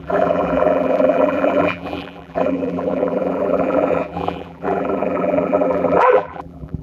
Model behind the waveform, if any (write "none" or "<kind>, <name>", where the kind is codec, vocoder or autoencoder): vocoder, BigVGAN v2